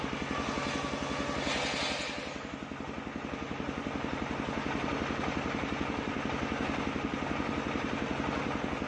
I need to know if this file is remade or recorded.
recorded